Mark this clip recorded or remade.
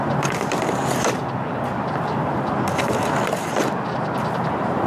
recorded